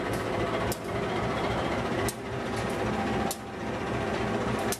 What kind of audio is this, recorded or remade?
recorded